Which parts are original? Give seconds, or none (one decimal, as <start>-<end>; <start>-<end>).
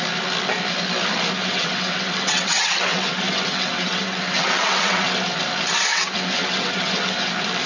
0.0-1.4; 5.4-5.9; 7.3-7.7